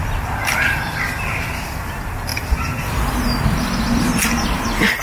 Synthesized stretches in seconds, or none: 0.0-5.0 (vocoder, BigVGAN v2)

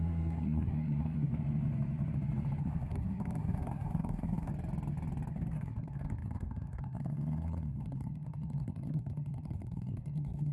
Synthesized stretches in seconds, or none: 0.0-1.3 (codec, SNAC); 2.6-4.5; 5.3-10.5

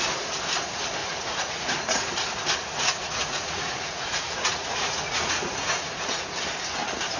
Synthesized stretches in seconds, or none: 1.0-2.1 (vocoder, Vocos); 2.6-6.4

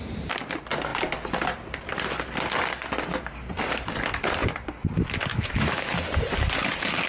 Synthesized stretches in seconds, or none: 5.3-5.9 (autoencoder, DAC-VAE)

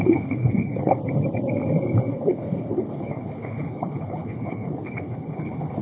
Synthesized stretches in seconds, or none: 0.0-1.0 (codec, HILCodec); 2.1-5.8

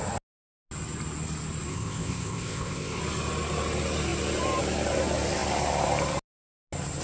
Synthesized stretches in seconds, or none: 1.7-3.0 (codec, ZipCodec)

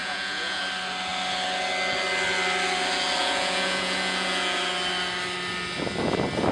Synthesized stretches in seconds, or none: 0.0-0.6 (vocoder, Vocos); 3.2-4.6

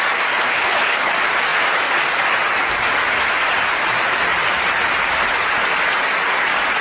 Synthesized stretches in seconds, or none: 0.5-1.1 (codec, HILCodec)